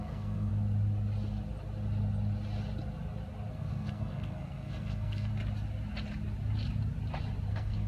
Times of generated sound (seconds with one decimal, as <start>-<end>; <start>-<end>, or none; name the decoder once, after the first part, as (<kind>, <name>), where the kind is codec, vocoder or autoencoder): 0.0-0.5 (codec, SNAC); 3.5-5.3; 7.5-7.9